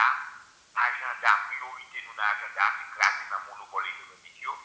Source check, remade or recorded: recorded